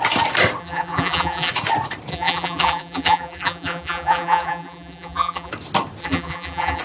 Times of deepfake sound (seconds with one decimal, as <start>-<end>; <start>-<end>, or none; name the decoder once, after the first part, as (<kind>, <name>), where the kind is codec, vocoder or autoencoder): 0.6-1.5 (vocoder, BigVGAN v2); 2.1-5.5; 6.0-6.8